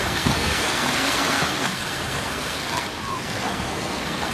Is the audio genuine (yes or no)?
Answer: no